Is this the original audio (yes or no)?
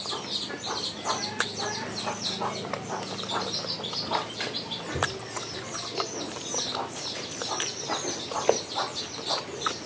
yes